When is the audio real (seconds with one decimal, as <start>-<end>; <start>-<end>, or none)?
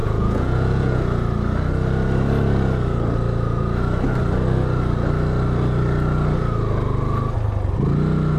1.0-8.4